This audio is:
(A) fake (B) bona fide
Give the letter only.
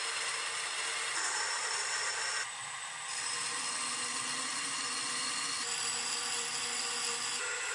B